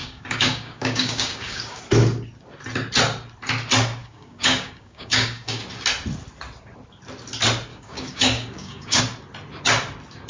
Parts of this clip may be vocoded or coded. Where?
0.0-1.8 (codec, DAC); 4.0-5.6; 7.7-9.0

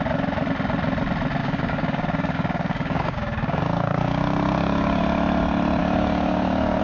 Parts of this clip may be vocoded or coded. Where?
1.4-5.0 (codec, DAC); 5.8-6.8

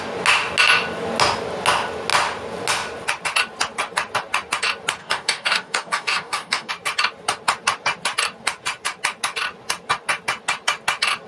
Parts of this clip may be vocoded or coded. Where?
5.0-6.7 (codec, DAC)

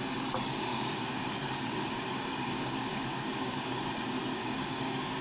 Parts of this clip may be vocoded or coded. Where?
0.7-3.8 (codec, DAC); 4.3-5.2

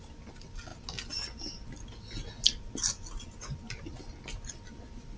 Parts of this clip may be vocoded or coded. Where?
none

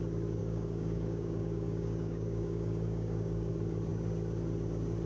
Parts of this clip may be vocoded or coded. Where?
0.4-3.5 (codec, DAC)

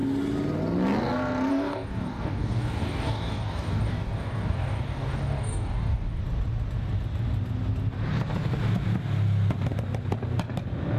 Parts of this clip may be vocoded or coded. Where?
1.5-6.2 (codec, DAC)